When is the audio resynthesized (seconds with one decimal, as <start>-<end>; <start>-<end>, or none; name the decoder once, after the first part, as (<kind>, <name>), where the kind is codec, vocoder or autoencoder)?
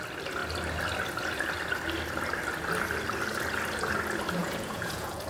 4.4-5.3 (vocoder, Vocos)